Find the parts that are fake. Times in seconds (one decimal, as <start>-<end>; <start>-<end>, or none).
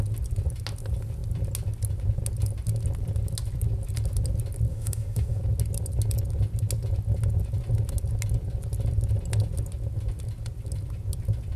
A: 4.7-5.4